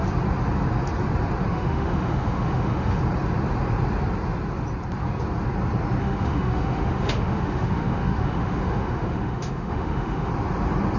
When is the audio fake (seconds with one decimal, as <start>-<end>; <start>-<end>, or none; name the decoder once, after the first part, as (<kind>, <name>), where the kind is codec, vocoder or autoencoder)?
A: 1.5-3.0 (autoencoder, DAC-VAE); 6.0-10.3